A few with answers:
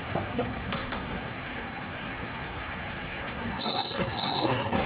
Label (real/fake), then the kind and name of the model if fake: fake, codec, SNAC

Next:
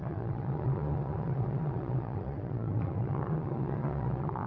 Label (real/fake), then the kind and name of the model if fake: fake, vocoder, Vocos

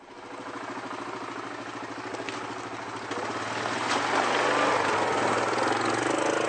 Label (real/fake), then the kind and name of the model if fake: real